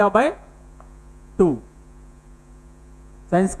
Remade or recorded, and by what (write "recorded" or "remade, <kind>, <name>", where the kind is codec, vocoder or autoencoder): remade, vocoder, Vocos